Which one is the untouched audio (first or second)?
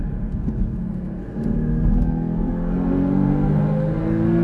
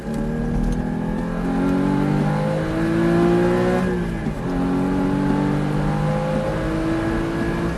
second